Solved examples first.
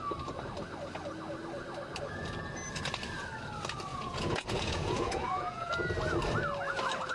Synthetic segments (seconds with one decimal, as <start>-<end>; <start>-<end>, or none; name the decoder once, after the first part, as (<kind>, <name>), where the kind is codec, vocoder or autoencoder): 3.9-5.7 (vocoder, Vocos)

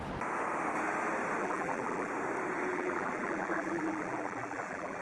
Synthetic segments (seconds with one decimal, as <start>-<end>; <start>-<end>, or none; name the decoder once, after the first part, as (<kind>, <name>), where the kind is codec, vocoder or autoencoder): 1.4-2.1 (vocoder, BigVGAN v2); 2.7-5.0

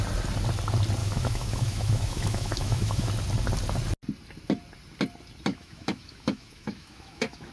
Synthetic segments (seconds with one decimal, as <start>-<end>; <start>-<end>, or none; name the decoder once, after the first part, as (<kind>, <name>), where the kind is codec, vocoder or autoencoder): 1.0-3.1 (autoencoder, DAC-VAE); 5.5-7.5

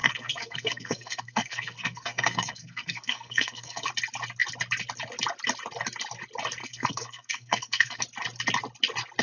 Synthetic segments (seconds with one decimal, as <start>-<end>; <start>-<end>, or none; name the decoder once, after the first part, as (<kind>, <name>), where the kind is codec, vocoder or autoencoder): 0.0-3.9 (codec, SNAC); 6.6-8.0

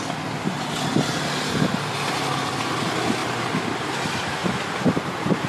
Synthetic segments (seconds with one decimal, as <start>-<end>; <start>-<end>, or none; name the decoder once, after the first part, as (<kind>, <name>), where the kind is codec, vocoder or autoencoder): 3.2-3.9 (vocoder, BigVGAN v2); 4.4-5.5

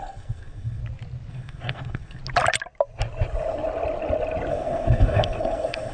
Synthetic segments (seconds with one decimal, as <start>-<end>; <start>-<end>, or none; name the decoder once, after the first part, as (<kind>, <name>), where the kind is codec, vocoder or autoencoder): 0.0-0.8 (codec, SNAC); 1.3-2.2; 4.5-5.9

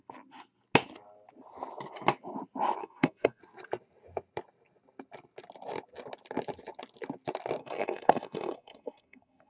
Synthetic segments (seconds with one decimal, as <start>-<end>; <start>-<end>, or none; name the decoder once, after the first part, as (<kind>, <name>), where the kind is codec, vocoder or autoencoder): 2.8-3.4 (codec, SNAC); 7.6-9.5

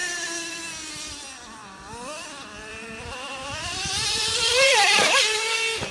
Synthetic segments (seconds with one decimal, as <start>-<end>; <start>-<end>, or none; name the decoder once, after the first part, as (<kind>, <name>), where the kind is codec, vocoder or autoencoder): 0.0-0.6 (vocoder, BigVGAN v2); 2.7-5.4